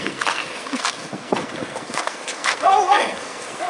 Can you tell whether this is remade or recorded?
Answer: remade